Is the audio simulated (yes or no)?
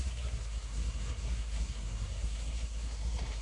yes